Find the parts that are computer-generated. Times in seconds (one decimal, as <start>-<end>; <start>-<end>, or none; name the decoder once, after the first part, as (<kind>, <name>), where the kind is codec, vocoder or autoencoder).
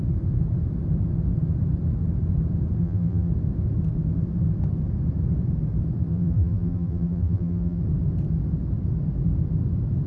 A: 2.8-3.3 (vocoder, BigVGAN v2); 6.1-7.8